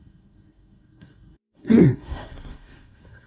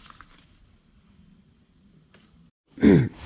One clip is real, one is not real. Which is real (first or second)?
second